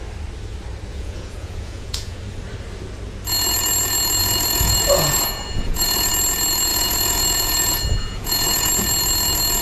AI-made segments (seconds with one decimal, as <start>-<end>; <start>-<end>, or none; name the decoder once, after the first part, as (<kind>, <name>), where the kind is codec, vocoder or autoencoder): 0.9-2.2 (vocoder, Vocos); 4.2-6.1; 6.7-8.7